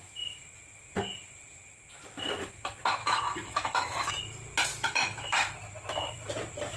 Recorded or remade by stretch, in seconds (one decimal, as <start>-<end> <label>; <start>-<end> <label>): 0.0-3.0 recorded; 3.0-4.1 remade; 4.1-4.7 recorded; 4.7-5.5 remade; 5.5-6.8 recorded